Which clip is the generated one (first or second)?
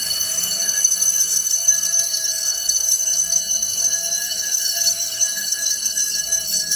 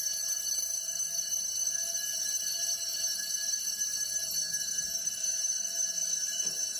first